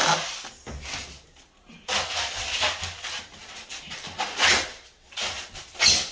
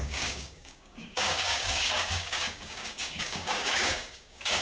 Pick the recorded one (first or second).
first